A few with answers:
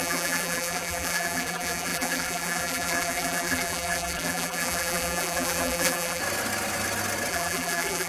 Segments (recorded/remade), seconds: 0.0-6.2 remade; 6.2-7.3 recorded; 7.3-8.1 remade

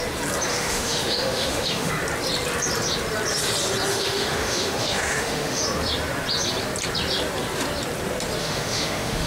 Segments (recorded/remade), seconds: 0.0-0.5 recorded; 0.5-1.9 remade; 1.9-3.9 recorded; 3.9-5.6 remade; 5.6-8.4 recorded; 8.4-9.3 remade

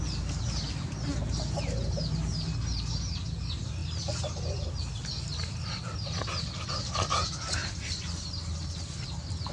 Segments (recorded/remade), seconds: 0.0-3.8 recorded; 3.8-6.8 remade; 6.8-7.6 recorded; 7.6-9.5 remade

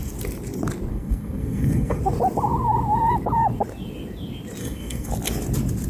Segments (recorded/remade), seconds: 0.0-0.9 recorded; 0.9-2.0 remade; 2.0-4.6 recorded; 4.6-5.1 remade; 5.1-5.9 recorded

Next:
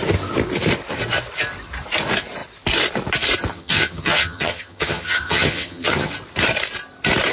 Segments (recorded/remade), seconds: 0.0-3.5 recorded; 3.5-6.1 remade; 6.1-7.3 recorded